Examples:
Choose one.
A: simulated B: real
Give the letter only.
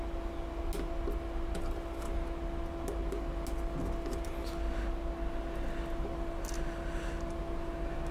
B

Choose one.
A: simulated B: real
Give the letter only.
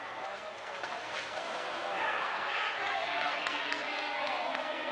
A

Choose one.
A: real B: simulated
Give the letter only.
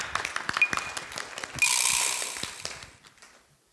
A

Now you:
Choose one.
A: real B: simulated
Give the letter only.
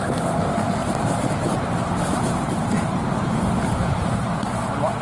A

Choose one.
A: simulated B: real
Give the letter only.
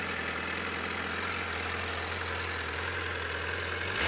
B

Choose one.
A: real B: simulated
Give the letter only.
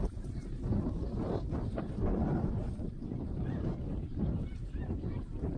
B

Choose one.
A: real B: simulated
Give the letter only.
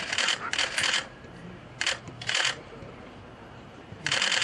B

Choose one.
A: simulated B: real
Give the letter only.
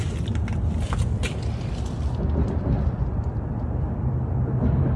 B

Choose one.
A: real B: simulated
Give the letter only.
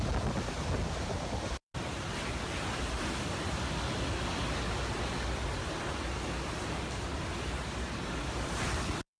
A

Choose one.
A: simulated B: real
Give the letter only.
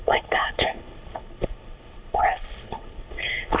A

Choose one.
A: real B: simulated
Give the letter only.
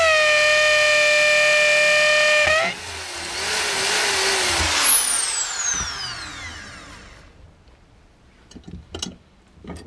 A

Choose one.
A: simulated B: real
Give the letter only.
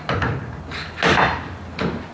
B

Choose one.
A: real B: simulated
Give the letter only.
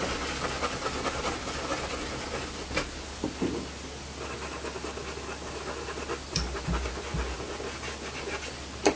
A